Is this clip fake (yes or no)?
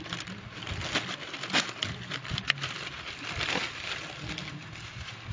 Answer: no